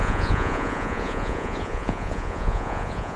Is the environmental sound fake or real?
fake